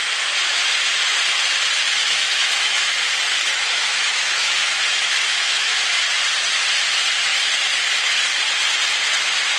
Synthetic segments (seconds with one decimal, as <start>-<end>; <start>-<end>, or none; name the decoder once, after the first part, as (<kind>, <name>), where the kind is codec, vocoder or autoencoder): 2.0-5.8 (autoencoder, DAC-VAE)